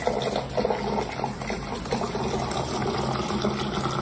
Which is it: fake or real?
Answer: real